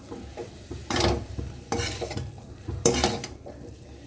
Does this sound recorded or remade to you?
remade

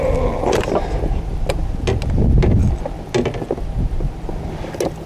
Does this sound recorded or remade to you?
recorded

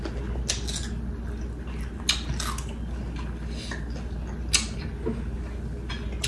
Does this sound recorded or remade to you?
recorded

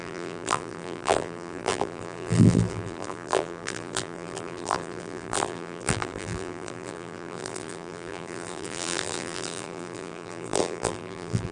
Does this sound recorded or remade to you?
remade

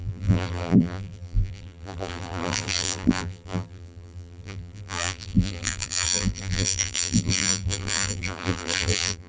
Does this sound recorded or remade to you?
remade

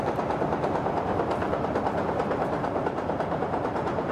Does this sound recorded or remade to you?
remade